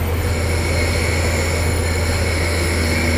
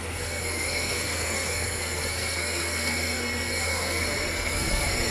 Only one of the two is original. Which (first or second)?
first